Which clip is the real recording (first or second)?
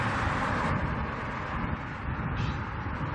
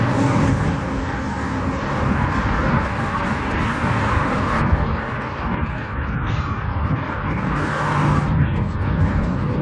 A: first